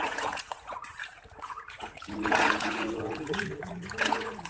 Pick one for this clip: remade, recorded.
remade